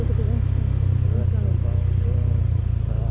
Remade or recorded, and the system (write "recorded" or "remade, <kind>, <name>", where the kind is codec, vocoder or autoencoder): recorded